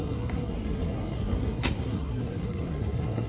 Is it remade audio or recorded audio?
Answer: remade